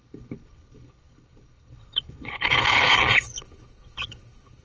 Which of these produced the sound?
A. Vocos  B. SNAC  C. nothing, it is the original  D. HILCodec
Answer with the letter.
D